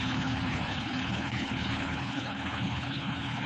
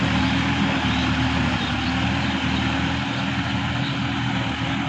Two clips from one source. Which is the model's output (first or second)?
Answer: first